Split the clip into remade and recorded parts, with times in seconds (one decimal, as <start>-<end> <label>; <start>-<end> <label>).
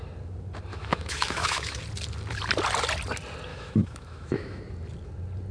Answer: 0.0-0.7 recorded; 0.7-1.8 remade; 1.8-3.5 recorded; 3.5-4.6 remade; 4.6-5.5 recorded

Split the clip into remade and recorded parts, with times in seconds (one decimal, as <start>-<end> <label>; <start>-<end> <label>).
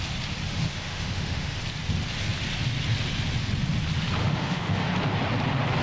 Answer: 0.0-0.5 recorded; 0.5-1.6 remade; 1.6-4.2 recorded; 4.2-4.9 remade; 4.9-5.8 recorded